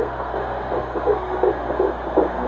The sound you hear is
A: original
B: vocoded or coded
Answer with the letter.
B